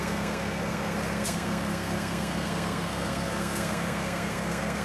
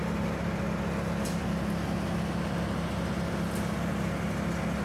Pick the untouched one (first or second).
second